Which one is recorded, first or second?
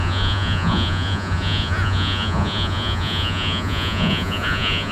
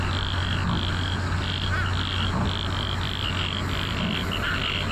second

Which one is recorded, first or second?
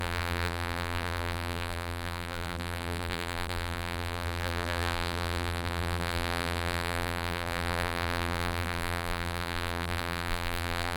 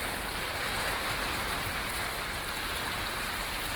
second